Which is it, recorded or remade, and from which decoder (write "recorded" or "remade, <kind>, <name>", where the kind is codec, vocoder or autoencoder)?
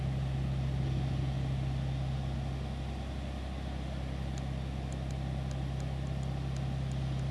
recorded